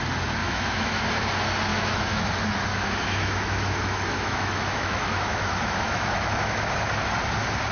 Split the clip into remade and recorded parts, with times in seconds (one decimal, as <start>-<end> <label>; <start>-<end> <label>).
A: 0.0-0.4 recorded; 0.4-1.0 remade; 1.0-1.7 recorded; 1.7-2.3 remade; 2.3-2.7 recorded; 2.7-6.7 remade; 6.7-7.7 recorded

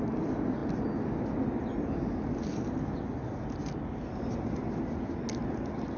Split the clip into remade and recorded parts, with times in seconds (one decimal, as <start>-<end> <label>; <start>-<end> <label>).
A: 0.0-6.0 recorded

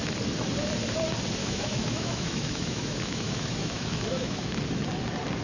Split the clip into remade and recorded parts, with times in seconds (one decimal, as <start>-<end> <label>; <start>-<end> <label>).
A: 0.0-1.4 recorded; 1.4-4.6 remade; 4.6-5.4 recorded

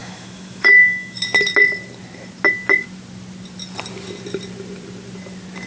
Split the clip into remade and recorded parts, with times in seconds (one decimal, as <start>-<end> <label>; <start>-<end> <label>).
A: 0.0-1.2 remade; 1.2-5.7 recorded

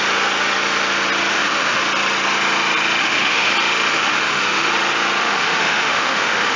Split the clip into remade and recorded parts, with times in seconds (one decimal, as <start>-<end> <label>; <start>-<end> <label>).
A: 0.0-1.3 recorded; 1.3-1.8 remade; 1.8-3.0 recorded; 3.0-3.5 remade; 3.5-3.9 recorded; 3.9-4.7 remade; 4.7-5.2 recorded; 5.2-6.6 remade

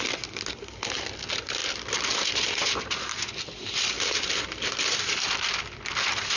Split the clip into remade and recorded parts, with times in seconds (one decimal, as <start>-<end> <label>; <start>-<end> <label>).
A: 0.0-6.4 recorded

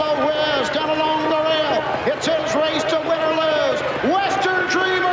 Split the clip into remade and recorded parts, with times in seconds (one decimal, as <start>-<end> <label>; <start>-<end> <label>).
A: 0.0-5.1 recorded

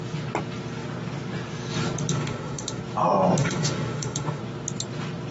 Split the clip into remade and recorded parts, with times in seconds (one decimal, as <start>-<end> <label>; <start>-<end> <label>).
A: 0.0-2.1 recorded; 2.1-2.8 remade; 2.8-3.4 recorded; 3.4-4.4 remade; 4.4-5.3 recorded